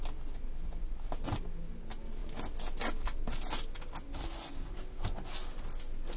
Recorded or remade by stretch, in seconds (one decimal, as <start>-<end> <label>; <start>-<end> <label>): 0.0-6.2 recorded